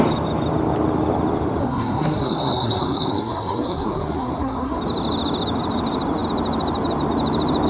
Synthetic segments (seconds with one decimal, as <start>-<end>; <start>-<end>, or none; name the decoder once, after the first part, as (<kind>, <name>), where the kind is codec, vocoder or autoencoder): 1.6-4.8 (codec, SNAC)